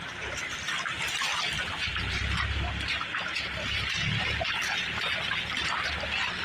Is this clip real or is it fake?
real